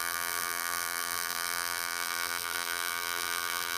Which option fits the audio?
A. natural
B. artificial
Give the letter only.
B